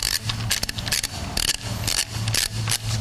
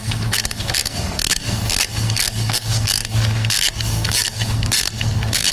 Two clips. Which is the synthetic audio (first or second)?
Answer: second